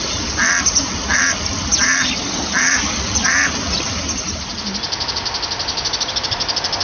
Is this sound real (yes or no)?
yes